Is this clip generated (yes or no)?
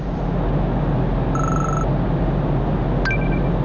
no